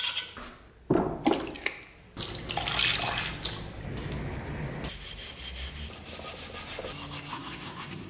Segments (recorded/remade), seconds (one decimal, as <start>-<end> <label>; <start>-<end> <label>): 0.0-7.3 recorded; 7.3-8.1 remade